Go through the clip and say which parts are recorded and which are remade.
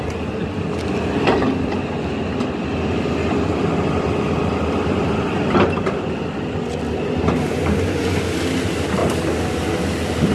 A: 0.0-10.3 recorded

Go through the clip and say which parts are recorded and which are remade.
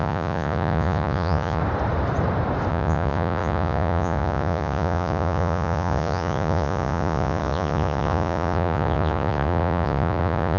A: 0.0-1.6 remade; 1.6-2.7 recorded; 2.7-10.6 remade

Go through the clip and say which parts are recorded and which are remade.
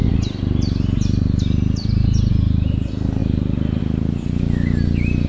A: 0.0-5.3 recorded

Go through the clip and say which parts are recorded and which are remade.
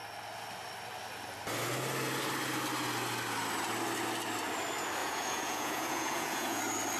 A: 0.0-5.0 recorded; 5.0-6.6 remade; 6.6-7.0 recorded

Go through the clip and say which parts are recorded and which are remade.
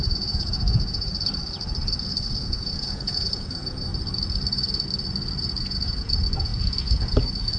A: 0.0-1.1 remade; 1.1-2.4 recorded; 2.4-3.9 remade; 3.9-5.6 recorded; 5.6-7.6 remade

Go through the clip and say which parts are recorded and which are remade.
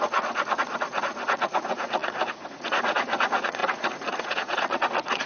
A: 0.0-5.3 remade